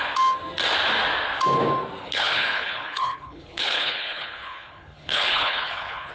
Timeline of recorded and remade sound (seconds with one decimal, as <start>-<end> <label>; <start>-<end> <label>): 0.0-2.0 recorded; 2.0-6.1 remade